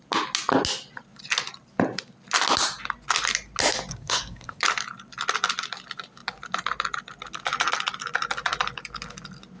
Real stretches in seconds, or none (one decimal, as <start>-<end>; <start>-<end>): 0.0-3.9; 4.6-9.6